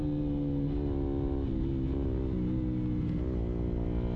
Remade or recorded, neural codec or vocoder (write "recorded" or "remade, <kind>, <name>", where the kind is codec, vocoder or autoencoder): recorded